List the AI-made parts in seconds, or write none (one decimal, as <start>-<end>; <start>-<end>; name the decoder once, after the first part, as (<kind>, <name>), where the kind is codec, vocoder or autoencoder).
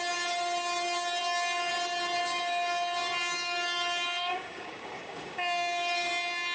1.2-1.7 (codec, DAC); 2.2-6.1